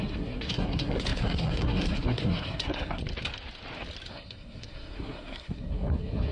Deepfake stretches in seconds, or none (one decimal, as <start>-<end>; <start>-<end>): 0.0-3.0; 4.1-6.3